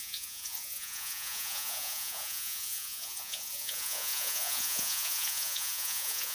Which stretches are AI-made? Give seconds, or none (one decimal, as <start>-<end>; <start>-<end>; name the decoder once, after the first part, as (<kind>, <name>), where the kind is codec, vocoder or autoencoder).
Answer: 0.0-6.3 (vocoder, Vocos)

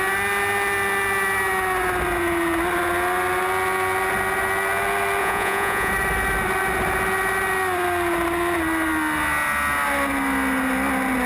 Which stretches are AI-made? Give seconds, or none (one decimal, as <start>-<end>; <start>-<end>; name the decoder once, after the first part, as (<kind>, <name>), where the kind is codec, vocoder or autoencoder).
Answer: 5.2-5.9 (vocoder, Vocos)

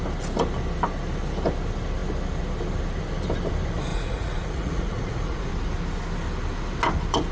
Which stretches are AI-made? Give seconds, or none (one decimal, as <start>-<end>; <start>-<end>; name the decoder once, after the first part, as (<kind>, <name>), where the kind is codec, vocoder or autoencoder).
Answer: 3.9-5.5 (vocoder, Vocos)

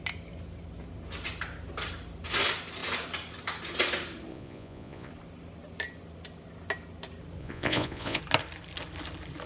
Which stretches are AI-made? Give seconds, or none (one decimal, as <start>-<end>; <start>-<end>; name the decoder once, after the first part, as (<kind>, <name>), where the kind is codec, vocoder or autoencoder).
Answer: 4.3-5.1 (vocoder, Vocos); 7.4-8.2

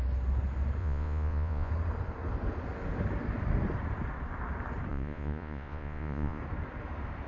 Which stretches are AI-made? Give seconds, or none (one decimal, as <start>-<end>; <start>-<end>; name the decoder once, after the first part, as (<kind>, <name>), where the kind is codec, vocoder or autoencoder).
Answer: 0.8-1.7 (vocoder, Vocos); 4.9-6.4

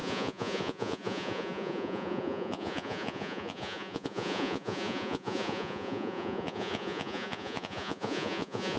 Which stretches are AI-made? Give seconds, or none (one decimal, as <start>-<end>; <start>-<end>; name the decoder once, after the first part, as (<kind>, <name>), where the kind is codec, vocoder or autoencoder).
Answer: 0.0-8.8 (vocoder, Vocos)

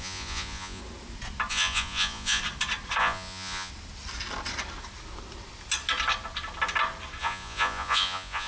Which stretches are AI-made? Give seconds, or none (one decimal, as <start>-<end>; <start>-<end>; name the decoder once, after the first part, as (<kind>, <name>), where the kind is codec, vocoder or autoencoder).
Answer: 0.0-0.8 (vocoder, Vocos); 1.5-2.4; 3.0-3.7; 7.2-8.5

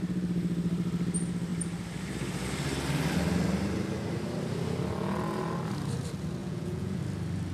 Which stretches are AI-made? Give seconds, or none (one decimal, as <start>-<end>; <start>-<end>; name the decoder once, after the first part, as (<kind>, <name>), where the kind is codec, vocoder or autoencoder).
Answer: 6.4-7.0 (vocoder, Vocos)